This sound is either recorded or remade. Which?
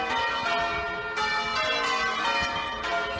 recorded